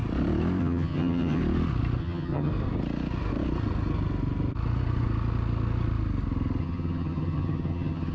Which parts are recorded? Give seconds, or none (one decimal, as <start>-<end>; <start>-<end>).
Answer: 0.0-0.6; 1.4-2.0; 2.5-6.6